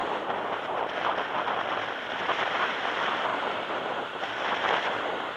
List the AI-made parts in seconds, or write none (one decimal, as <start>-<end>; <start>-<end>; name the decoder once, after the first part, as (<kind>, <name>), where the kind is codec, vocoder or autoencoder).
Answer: none